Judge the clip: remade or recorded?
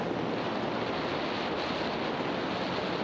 recorded